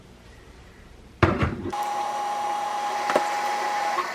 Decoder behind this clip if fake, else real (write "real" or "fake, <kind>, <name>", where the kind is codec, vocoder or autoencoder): fake, vocoder, BigVGAN v2